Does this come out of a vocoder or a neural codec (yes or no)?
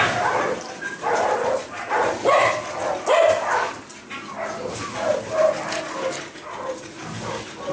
no